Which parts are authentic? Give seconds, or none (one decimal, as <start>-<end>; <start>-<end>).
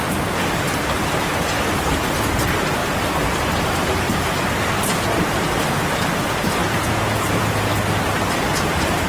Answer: 0.0-6.6; 7.7-9.1